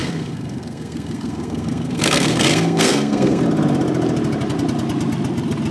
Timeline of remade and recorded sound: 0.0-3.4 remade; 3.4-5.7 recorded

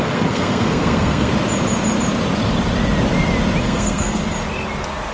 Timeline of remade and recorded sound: 0.0-1.3 remade; 1.3-3.6 recorded; 3.6-4.2 remade; 4.2-5.1 recorded

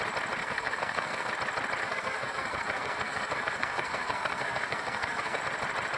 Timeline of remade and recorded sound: 0.0-0.4 recorded; 0.4-1.3 remade; 1.3-1.8 recorded; 1.8-5.4 remade; 5.4-6.0 recorded

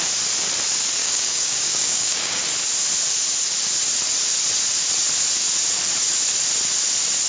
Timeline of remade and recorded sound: 0.0-1.0 recorded; 1.0-2.4 remade; 2.4-7.3 recorded

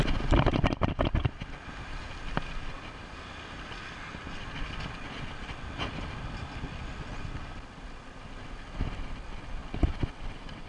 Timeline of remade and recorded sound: 0.0-10.7 recorded

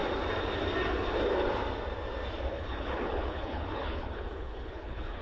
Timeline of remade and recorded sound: 0.0-2.5 recorded; 2.5-5.2 remade

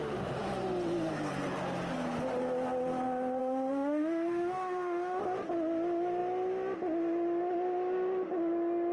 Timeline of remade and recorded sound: 0.0-3.4 recorded; 3.4-5.2 remade; 5.2-8.9 recorded

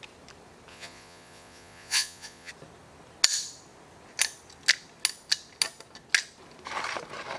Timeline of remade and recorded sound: 0.0-0.7 recorded; 0.7-2.5 remade; 2.5-7.4 recorded